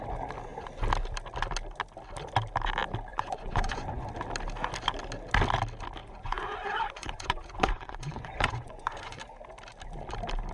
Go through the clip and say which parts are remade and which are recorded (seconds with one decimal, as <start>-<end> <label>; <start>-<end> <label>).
0.0-3.1 recorded; 3.1-4.1 remade; 4.1-6.0 recorded; 6.0-9.2 remade; 9.2-10.5 recorded